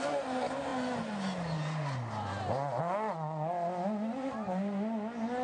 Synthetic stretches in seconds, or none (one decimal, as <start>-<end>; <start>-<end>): none